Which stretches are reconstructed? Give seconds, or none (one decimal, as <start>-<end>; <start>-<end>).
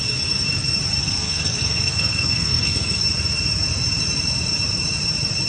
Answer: 1.0-3.0